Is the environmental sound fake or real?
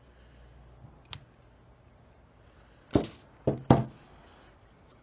real